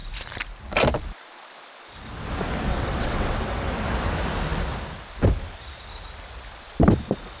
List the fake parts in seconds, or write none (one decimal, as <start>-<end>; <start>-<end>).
2.7-3.7